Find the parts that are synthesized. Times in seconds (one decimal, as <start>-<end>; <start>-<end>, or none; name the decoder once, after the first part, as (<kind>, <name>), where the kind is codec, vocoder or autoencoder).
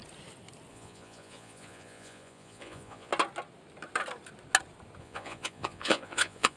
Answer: 0.7-3.1 (vocoder, Vocos); 5.0-6.6